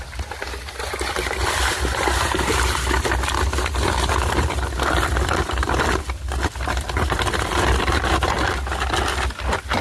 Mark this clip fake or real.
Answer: real